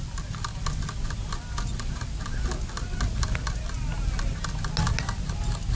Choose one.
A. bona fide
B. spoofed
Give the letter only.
A